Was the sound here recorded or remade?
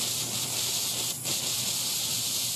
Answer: recorded